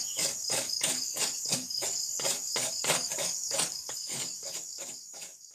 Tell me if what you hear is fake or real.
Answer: fake